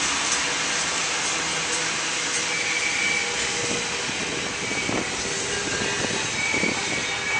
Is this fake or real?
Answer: real